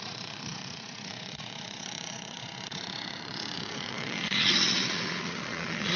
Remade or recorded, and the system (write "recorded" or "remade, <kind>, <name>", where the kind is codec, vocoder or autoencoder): remade, vocoder, Vocos